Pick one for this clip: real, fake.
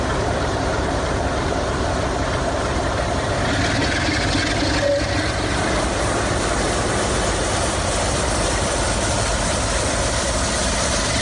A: real